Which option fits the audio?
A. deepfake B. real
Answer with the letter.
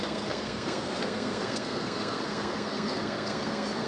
A